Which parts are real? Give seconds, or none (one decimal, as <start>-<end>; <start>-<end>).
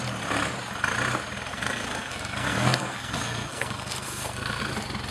0.0-1.5; 4.6-5.1